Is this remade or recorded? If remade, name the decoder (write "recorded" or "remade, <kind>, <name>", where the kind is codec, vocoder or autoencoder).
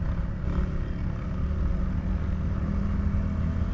recorded